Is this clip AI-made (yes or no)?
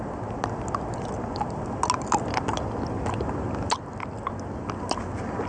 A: no